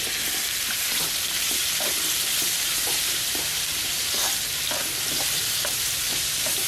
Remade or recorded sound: remade